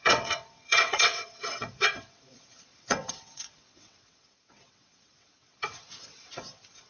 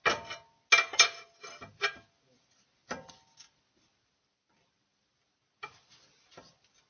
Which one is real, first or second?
second